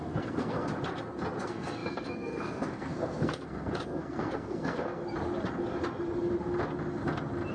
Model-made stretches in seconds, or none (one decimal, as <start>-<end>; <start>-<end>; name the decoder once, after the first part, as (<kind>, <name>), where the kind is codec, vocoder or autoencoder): 0.0-0.7 (codec, SNAC); 1.4-5.0

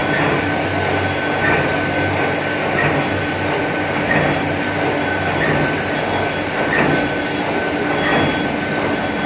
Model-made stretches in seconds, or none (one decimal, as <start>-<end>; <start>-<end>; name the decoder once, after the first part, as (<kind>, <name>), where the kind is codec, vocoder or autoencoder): none

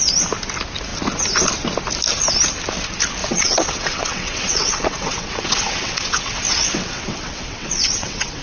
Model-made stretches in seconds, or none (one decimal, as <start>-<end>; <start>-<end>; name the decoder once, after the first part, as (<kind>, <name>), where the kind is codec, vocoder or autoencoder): 3.2-8.4 (vocoder, WaveNeXt)

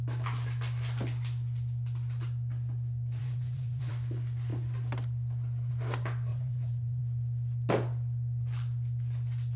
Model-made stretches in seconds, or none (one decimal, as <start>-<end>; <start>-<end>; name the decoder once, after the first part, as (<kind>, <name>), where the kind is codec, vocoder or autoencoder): 3.2-3.9 (vocoder, Vocos); 6.3-7.0

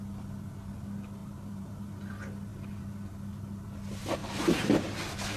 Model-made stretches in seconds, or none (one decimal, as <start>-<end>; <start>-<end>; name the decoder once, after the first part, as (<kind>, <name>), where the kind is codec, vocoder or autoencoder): 1.2-1.8 (vocoder, BigVGAN v2); 4.2-5.0

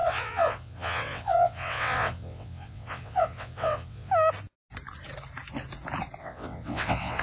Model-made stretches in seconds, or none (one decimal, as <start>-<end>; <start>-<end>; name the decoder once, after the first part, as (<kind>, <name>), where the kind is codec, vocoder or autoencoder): 0.0-4.1 (vocoder, WaveNeXt); 6.2-7.2